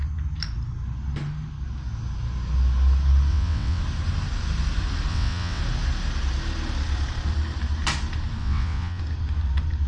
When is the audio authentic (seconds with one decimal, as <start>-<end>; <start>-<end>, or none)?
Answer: 0.0-3.3; 3.8-5.1; 5.6-8.4; 9.0-9.9